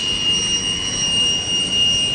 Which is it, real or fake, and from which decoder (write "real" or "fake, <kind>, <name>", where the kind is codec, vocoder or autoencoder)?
real